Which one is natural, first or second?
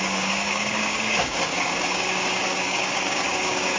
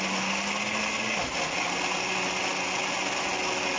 second